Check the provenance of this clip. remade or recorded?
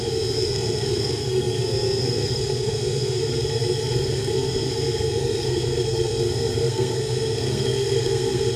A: remade